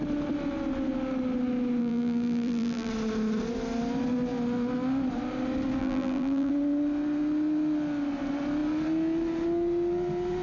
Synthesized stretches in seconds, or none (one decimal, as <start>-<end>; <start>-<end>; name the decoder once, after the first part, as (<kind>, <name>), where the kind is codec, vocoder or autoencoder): 1.8-2.9 (vocoder, BigVGAN v2); 5.8-6.5